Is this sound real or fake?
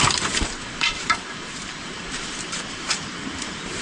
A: fake